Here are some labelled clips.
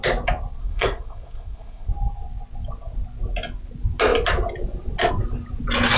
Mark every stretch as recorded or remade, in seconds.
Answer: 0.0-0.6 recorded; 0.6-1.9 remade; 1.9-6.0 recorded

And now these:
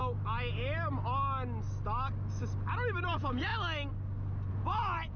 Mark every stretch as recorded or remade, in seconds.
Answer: 0.0-3.1 recorded; 3.1-3.5 remade; 3.5-4.5 recorded; 4.5-5.2 remade

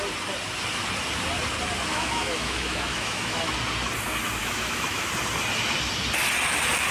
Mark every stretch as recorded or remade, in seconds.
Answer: 0.0-1.9 recorded; 1.9-3.5 remade; 3.5-4.4 recorded; 4.4-5.1 remade; 5.1-6.9 recorded